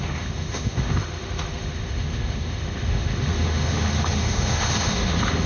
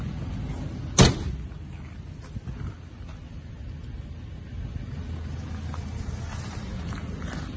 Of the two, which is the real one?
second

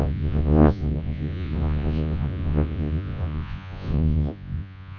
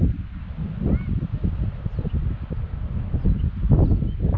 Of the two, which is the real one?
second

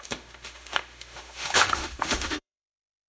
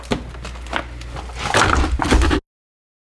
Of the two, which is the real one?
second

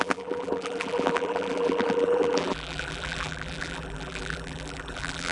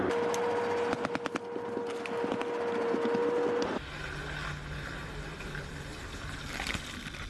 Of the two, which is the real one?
second